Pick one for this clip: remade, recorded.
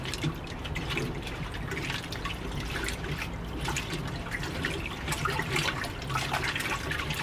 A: recorded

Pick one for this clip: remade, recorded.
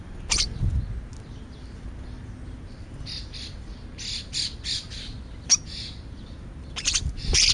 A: recorded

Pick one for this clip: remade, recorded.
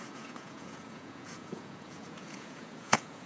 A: remade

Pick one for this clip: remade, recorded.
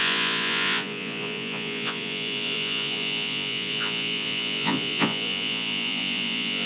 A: remade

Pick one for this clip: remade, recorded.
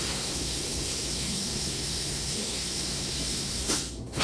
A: remade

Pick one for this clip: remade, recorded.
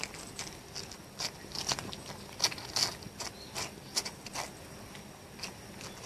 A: recorded